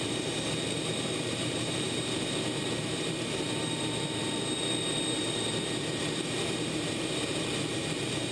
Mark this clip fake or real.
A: fake